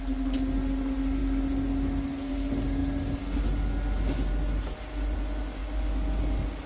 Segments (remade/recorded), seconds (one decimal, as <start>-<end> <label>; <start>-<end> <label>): 0.0-6.7 recorded